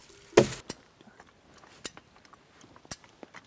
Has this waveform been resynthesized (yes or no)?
no